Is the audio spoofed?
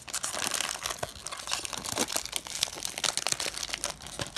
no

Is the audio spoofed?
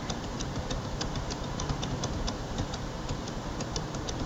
yes